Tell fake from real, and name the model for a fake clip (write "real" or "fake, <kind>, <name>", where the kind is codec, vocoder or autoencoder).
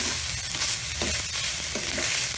real